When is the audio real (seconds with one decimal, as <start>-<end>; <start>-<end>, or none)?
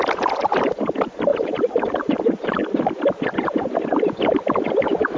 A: 0.0-1.3; 2.2-5.2